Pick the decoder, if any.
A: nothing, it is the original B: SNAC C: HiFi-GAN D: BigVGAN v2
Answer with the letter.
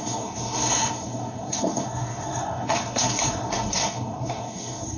B